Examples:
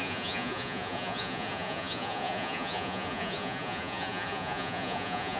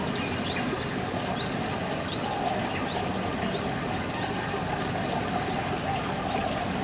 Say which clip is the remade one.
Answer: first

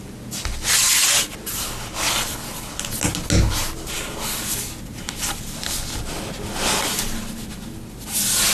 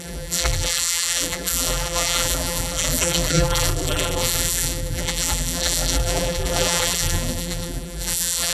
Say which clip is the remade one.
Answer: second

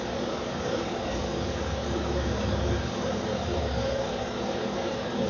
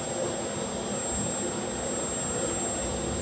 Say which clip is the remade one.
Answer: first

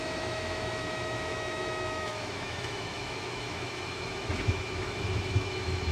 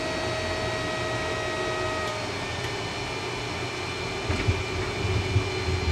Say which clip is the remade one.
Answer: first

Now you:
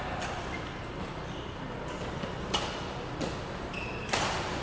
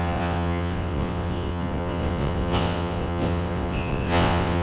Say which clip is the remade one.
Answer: second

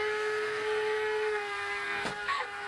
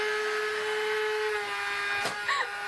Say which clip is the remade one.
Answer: first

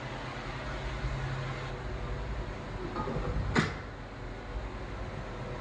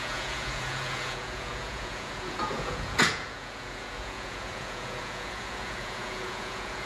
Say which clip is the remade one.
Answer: second